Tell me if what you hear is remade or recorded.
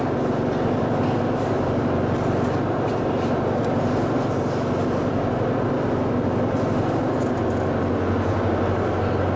recorded